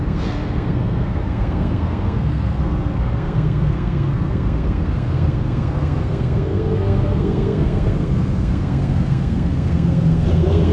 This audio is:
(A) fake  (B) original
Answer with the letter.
A